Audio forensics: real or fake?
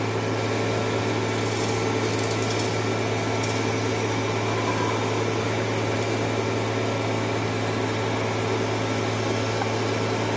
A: real